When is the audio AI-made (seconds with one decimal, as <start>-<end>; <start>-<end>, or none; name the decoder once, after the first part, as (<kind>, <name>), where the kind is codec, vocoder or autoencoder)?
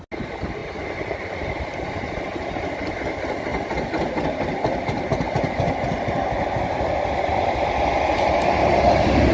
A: 0.6-2.9 (vocoder, BigVGAN v2)